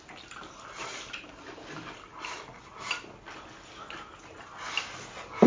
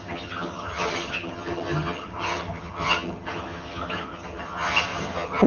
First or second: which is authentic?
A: first